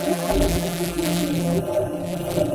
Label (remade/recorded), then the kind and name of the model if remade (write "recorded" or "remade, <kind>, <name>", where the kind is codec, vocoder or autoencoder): remade, vocoder, BigVGAN v2